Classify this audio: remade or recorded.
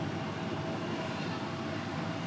recorded